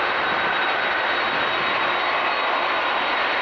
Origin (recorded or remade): recorded